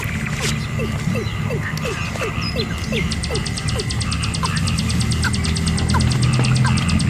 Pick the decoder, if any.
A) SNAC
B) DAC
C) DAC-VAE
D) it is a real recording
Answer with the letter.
D